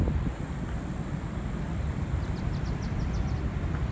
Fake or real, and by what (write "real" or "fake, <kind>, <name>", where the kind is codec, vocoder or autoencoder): real